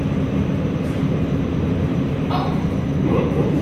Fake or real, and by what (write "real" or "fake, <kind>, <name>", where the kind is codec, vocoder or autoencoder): fake, vocoder, BigVGAN v2